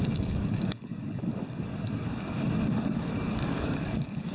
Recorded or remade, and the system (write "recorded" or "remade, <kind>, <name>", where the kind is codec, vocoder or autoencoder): remade, codec, DAC